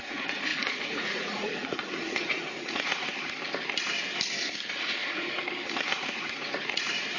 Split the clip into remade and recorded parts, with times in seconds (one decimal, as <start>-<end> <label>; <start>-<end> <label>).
0.0-3.1 remade; 3.1-5.9 recorded; 5.9-7.2 remade